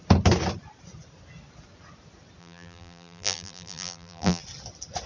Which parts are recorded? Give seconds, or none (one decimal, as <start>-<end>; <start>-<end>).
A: 0.0-2.4; 4.4-5.1